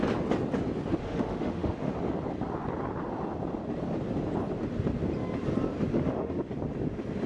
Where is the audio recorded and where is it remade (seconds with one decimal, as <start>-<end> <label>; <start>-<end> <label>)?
0.0-1.0 recorded; 1.0-1.9 remade; 1.9-5.9 recorded; 5.9-6.5 remade; 6.5-7.3 recorded